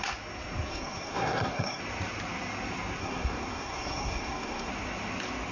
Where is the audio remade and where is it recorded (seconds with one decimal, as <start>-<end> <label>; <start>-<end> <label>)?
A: 0.0-0.7 recorded; 0.7-1.8 remade; 1.8-3.0 recorded; 3.0-4.7 remade; 4.7-5.5 recorded